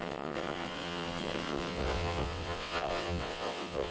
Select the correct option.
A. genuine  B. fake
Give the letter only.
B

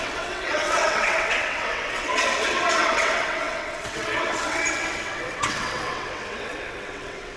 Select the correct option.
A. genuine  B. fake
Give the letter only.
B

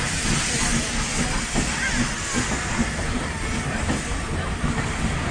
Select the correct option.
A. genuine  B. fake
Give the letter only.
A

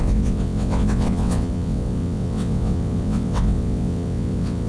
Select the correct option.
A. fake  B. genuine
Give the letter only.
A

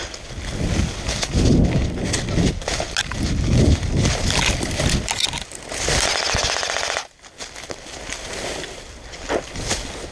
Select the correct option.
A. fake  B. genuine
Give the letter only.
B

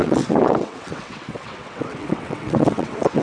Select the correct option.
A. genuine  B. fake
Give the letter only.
B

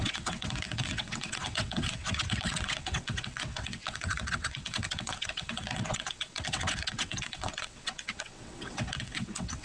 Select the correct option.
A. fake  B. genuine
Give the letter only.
A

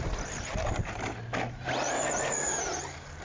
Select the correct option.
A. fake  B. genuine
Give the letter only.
B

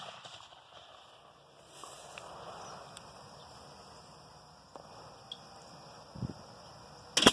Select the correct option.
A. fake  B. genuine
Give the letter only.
B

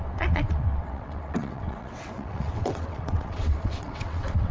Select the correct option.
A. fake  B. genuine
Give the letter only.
A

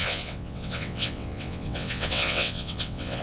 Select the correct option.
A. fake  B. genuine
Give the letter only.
A